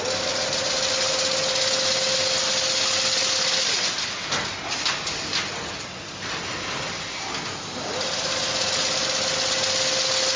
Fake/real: real